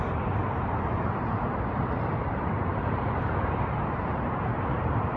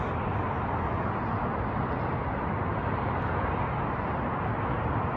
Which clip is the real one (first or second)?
second